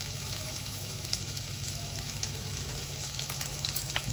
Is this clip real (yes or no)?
no